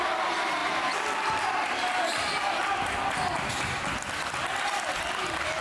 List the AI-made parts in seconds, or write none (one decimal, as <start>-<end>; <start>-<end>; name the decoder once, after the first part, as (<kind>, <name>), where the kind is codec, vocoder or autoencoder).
none